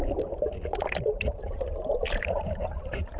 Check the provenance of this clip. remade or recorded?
recorded